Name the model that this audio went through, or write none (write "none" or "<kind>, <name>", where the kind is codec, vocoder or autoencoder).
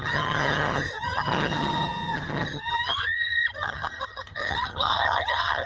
vocoder, HiFi-GAN